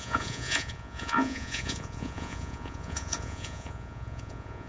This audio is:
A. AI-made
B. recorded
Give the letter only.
A